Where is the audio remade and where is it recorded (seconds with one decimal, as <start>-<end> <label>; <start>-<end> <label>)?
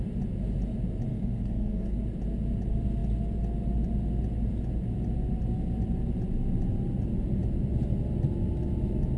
0.0-1.1 recorded; 1.1-2.0 remade; 2.0-9.2 recorded